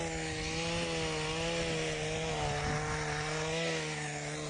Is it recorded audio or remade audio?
recorded